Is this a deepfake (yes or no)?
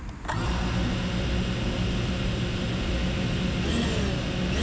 no